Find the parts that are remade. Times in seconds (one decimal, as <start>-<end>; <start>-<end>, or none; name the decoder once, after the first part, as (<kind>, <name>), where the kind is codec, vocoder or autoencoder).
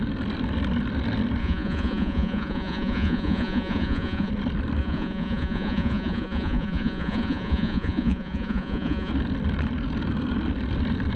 1.4-4.3 (vocoder, Vocos); 4.8-9.1